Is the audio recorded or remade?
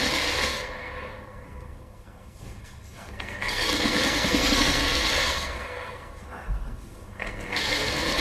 remade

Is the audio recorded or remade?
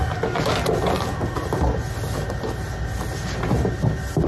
recorded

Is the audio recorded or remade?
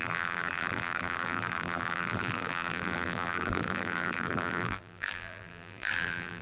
remade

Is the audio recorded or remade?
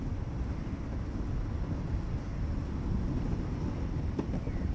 recorded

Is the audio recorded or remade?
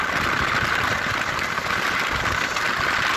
recorded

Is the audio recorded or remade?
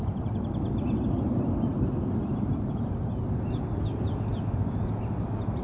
recorded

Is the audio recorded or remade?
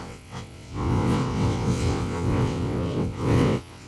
remade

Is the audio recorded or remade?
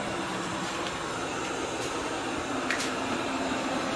remade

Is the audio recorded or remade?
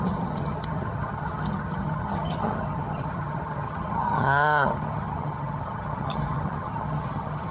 remade